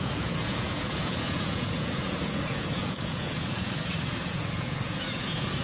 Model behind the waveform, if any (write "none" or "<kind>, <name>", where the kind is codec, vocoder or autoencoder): vocoder, Vocos